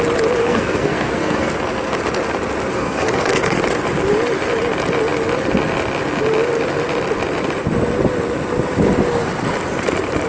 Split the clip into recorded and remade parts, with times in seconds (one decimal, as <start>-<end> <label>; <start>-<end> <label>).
0.0-0.4 recorded; 0.4-1.5 remade; 1.5-2.7 recorded; 2.7-3.6 remade; 3.6-10.3 recorded